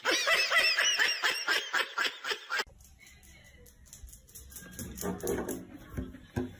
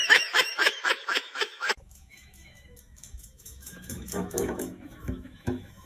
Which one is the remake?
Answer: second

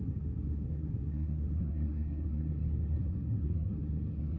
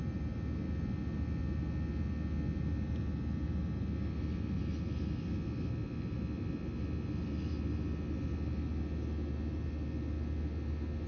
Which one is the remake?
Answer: first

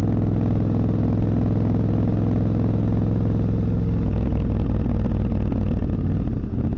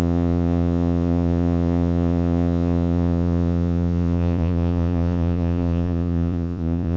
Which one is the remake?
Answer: second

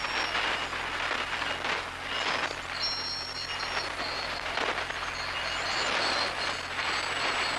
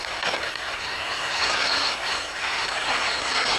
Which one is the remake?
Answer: second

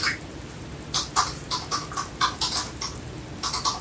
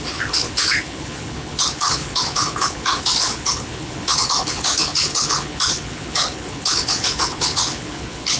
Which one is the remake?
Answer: second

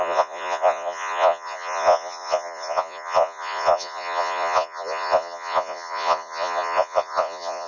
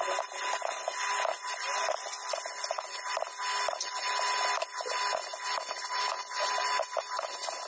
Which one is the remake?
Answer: first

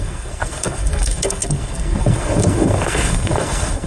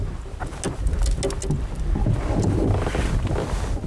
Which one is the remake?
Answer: first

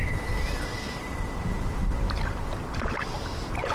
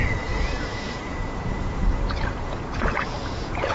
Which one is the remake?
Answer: second